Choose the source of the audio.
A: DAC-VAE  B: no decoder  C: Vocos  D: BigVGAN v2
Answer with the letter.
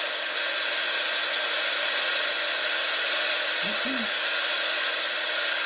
B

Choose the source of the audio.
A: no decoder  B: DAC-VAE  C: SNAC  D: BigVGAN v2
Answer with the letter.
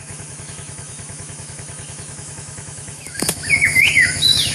B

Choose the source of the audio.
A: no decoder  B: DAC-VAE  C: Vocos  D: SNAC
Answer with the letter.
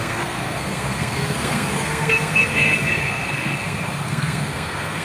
D